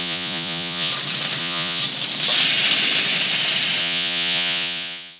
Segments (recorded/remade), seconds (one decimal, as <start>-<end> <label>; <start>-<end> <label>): 0.0-0.9 remade; 0.9-1.4 recorded; 1.4-1.8 remade; 1.8-3.8 recorded; 3.8-5.2 remade